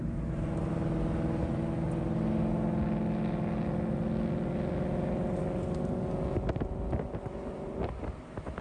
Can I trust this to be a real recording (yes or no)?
yes